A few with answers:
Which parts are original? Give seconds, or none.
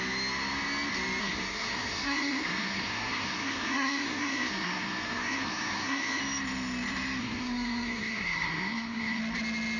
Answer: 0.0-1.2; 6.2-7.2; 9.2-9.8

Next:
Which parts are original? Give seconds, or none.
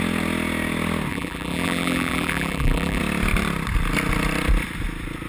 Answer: 0.0-1.1; 3.0-5.3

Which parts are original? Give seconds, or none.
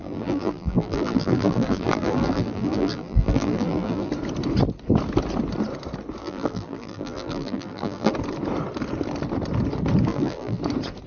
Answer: 4.1-6.2; 8.1-10.1; 10.6-11.1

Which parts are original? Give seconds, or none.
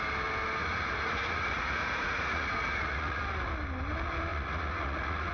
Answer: 0.0-0.6; 3.2-4.3